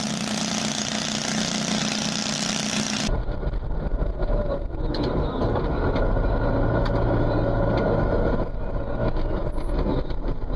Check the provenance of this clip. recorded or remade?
recorded